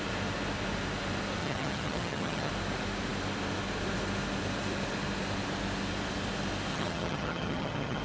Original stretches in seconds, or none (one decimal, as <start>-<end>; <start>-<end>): 0.0-1.4; 2.5-6.7